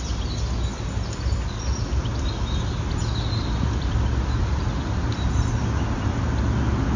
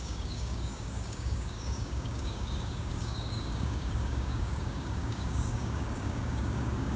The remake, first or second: second